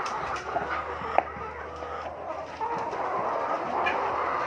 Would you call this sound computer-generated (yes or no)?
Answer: no